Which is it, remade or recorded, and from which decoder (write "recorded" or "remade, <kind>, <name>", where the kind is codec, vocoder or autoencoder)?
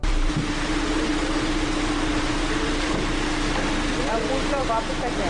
remade, vocoder, BigVGAN v2